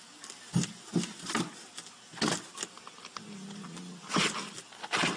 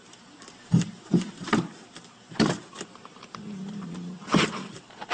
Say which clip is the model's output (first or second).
second